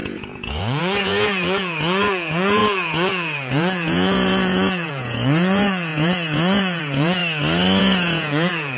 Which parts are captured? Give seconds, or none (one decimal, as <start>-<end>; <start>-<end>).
7.2-7.8